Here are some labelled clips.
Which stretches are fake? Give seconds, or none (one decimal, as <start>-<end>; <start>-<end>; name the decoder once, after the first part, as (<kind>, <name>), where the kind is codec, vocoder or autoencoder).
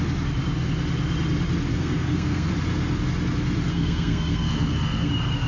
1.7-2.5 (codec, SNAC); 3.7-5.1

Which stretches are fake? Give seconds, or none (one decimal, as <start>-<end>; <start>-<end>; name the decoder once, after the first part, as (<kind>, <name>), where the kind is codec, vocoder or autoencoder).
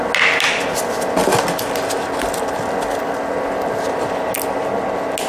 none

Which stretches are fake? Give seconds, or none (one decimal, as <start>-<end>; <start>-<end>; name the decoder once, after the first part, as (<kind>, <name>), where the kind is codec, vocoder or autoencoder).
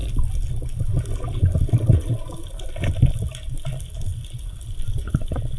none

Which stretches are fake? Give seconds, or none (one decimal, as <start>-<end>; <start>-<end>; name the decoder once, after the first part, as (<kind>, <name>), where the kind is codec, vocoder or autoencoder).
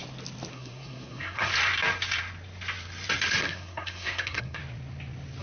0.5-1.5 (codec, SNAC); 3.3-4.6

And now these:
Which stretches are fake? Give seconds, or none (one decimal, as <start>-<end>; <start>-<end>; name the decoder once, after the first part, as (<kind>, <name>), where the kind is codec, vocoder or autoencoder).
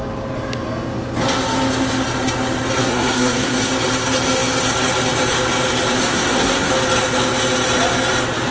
2.8-3.7 (codec, SNAC); 6.0-6.7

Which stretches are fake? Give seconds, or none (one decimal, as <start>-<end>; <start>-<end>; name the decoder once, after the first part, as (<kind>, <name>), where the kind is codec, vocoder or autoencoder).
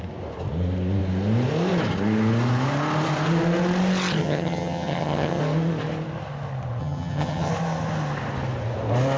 4.2-5.4 (vocoder, HiFi-GAN); 6.8-7.5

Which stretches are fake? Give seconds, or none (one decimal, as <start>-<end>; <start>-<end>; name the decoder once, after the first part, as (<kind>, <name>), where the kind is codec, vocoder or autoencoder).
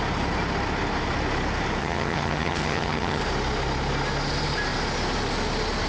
1.8-3.2 (vocoder, HiFi-GAN)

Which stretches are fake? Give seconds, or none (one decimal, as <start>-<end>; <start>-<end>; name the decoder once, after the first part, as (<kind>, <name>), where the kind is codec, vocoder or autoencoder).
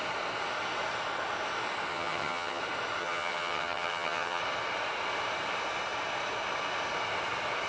1.9-2.6 (vocoder, HiFi-GAN); 3.0-4.4